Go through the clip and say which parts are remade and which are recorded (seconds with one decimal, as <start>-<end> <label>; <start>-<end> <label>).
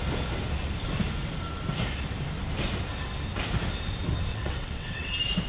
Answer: 0.0-4.3 recorded; 4.3-5.1 remade; 5.1-5.5 recorded